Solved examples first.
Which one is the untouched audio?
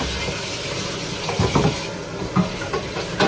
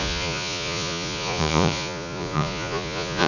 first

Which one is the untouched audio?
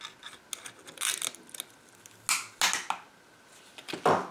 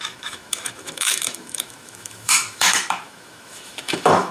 first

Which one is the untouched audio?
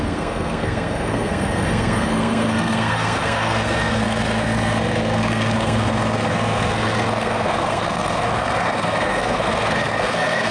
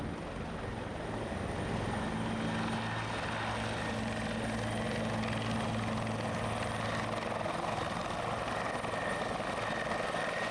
second